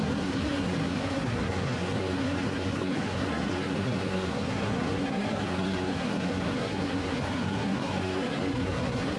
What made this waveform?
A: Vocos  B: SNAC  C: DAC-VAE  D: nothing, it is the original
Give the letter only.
B